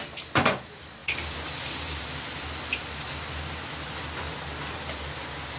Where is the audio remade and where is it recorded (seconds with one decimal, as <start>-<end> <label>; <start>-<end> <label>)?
0.0-5.6 recorded